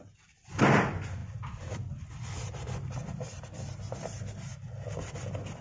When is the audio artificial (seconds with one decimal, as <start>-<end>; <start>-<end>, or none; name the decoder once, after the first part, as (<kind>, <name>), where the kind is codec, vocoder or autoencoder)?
none